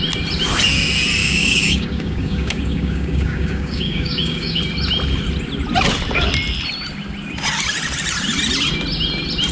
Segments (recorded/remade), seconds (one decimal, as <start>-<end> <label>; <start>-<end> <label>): 0.0-1.2 recorded; 1.2-4.6 remade; 4.6-9.5 recorded